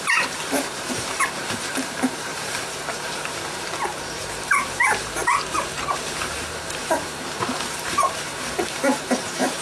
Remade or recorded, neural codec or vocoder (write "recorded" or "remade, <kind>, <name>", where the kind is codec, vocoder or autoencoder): remade, vocoder, BigVGAN v2